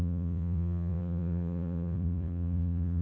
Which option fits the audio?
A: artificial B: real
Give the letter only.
A